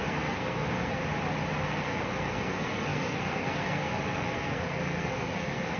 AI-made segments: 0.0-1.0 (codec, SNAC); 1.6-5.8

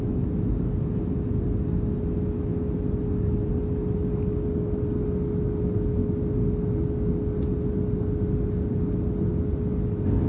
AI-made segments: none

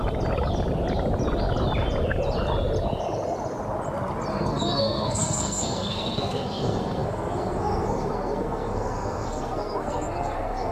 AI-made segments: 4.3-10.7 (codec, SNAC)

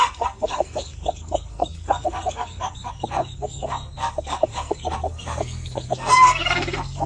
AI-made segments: 0.0-7.1 (codec, SNAC)

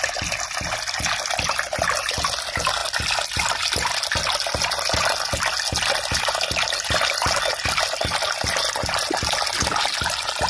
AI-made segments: none

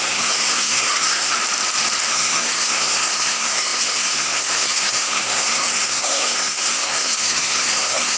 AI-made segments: 0.0-1.3 (codec, SNAC); 2.1-8.2